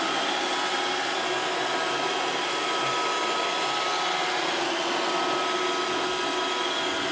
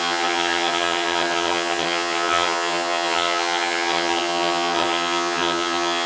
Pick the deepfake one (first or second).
second